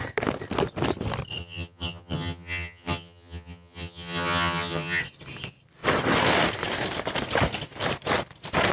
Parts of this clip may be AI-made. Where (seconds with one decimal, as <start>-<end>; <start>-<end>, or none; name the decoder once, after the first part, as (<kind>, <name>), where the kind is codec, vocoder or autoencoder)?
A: 1.4-5.0 (vocoder, HiFi-GAN)